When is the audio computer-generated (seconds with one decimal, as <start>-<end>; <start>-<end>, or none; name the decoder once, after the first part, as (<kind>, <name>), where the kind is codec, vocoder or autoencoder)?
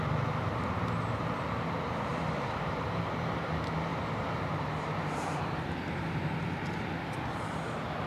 2.1-3.0 (vocoder, BigVGAN v2); 3.9-5.4